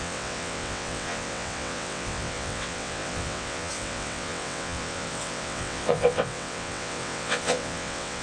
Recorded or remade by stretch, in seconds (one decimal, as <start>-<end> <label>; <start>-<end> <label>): 0.0-8.2 remade